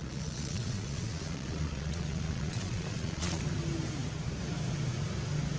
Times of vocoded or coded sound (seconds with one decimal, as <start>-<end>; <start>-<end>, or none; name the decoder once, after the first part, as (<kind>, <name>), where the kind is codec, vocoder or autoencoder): 0.0-3.4 (vocoder, Vocos)